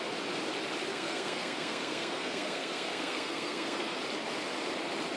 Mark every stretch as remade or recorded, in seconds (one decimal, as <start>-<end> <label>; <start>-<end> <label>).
0.0-0.9 recorded; 0.9-4.0 remade; 4.0-5.2 recorded